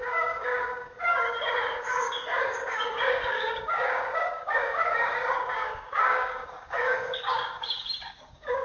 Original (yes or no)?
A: no